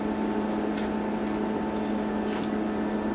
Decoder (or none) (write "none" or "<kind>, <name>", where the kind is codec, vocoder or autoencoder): none